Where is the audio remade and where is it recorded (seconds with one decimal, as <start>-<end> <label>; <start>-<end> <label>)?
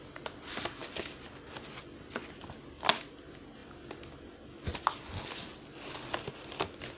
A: 0.0-7.0 recorded